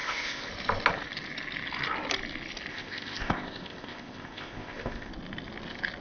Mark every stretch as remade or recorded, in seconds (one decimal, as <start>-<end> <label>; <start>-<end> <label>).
0.0-0.5 remade; 0.5-2.7 recorded; 2.7-5.1 remade; 5.1-6.0 recorded